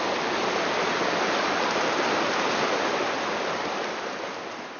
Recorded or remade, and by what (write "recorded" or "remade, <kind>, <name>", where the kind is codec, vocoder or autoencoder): recorded